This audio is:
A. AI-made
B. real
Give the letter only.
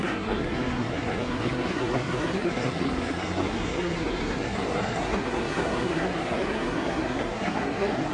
A